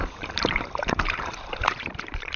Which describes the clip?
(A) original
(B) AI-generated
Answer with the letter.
B